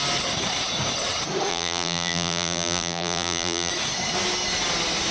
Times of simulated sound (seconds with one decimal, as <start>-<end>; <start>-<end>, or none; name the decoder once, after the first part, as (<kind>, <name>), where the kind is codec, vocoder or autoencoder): 1.5-3.7 (vocoder, BigVGAN v2)